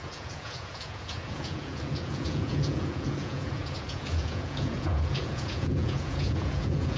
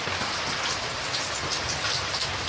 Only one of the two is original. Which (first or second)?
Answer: second